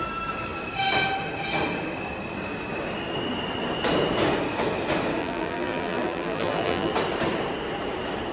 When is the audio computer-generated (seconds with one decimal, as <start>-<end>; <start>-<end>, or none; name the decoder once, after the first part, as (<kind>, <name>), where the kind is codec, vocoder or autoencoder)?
5.2-6.9 (vocoder, BigVGAN v2)

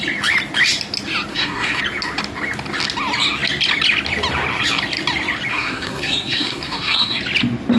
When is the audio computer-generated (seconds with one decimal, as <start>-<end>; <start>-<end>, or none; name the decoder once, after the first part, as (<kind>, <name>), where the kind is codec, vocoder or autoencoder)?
1.3-1.8 (codec, SNAC); 5.5-7.2

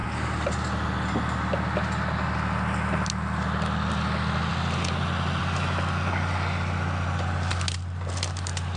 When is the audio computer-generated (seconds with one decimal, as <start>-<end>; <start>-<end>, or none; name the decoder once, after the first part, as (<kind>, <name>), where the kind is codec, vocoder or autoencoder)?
none

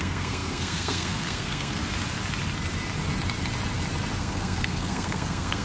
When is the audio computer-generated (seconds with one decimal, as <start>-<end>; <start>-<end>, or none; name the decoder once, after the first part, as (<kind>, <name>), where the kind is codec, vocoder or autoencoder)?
0.0-1.8 (codec, SNAC); 4.2-5.6